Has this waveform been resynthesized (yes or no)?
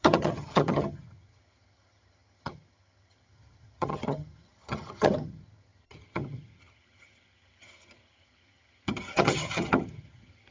yes